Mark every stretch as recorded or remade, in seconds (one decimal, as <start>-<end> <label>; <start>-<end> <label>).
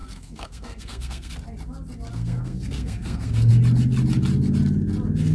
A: 0.0-1.3 remade; 1.3-2.1 recorded; 2.1-3.5 remade; 3.5-5.3 recorded